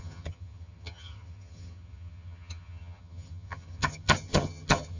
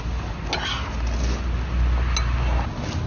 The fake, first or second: first